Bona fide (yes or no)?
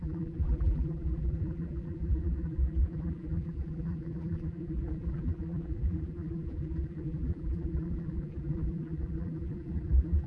no